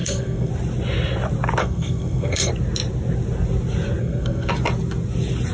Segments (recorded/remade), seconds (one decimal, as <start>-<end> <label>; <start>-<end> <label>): 0.0-0.5 remade; 0.5-1.6 recorded; 1.6-2.5 remade; 2.5-4.0 recorded; 4.0-4.5 remade; 4.5-5.5 recorded